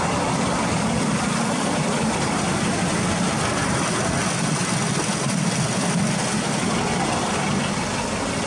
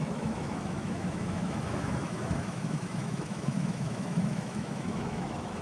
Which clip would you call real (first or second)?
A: first